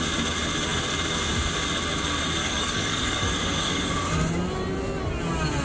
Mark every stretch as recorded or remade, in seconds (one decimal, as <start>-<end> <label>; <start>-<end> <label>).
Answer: 0.0-2.4 recorded; 2.4-3.8 remade; 3.8-5.6 recorded